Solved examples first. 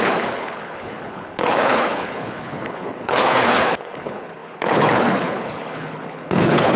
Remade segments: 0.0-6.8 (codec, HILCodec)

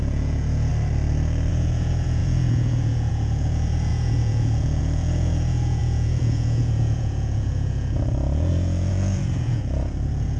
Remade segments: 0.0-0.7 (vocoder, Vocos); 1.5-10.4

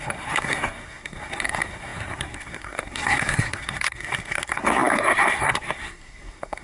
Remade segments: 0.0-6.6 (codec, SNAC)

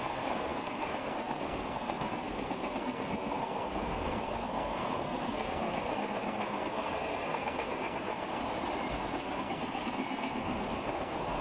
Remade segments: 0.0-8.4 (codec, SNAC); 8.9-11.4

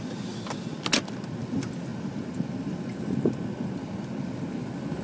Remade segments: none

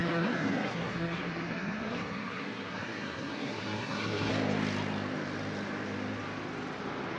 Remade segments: 0.0-4.3 (codec, SNAC)

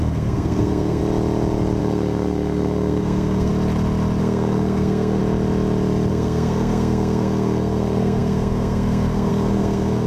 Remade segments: 0.0-1.0 (codec, SNAC); 1.8-3.5; 4.2-5.2; 6.1-10.1

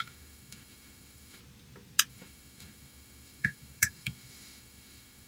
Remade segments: 0.0-1.4 (autoencoder, DAC-VAE); 2.1-5.3